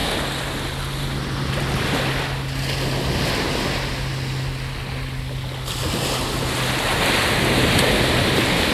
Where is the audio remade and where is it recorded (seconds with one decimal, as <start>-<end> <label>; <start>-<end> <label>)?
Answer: 0.0-8.7 recorded